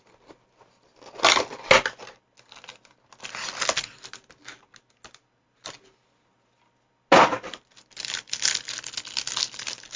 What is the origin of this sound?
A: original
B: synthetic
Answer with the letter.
A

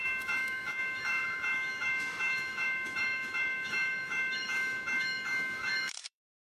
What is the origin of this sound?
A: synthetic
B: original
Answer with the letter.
A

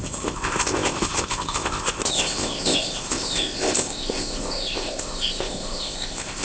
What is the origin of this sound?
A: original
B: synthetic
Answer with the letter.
B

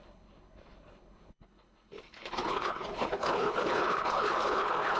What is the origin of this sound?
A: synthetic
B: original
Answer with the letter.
A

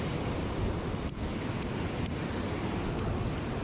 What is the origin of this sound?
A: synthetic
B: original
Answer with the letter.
B